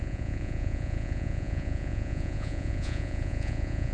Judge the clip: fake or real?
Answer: fake